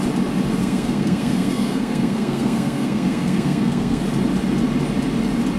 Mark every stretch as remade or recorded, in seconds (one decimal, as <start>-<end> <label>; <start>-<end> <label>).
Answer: 0.0-0.6 recorded; 0.6-4.0 remade; 4.0-5.6 recorded